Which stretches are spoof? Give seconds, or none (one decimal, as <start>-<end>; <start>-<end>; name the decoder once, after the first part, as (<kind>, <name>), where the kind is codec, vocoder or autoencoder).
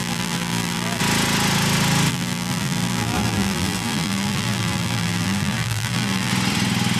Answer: 0.0-1.0 (vocoder, BigVGAN v2); 2.1-6.3